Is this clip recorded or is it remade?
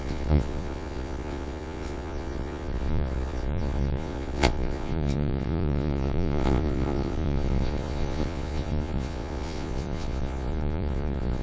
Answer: remade